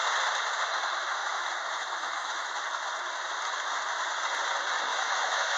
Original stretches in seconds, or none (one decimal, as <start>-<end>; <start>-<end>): 0.0-1.2; 2.6-4.9